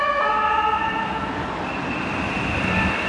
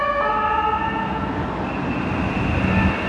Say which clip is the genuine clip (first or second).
second